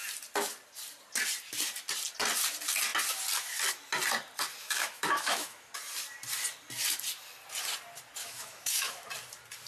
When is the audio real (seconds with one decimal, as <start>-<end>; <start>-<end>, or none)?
0.0-4.6; 5.7-8.2; 9.1-9.7